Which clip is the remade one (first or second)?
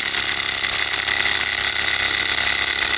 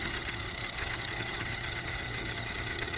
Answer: second